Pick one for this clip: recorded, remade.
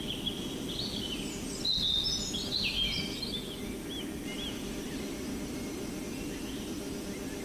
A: recorded